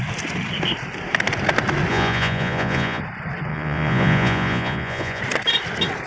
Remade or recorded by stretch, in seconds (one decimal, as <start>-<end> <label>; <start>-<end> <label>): 0.0-1.9 recorded; 1.9-3.0 remade; 3.0-3.5 recorded; 3.5-5.2 remade; 5.2-6.1 recorded